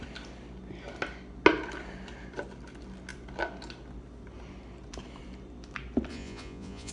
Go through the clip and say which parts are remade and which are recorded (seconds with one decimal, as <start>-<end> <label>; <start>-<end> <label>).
0.0-6.1 recorded; 6.1-6.9 remade